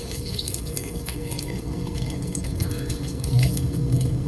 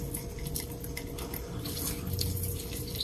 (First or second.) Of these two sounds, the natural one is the second